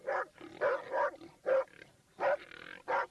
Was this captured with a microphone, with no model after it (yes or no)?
yes